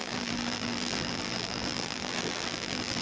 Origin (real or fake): fake